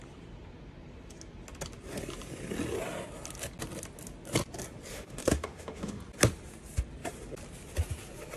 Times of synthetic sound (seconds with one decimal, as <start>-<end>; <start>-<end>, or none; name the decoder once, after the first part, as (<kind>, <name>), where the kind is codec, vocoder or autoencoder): 4.9-6.0 (autoencoder, DAC-VAE)